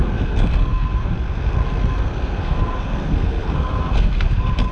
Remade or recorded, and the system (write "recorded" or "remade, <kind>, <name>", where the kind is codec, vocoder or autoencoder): remade, codec, SNAC